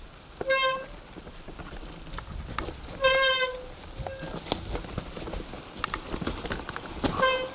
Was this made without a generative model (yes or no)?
yes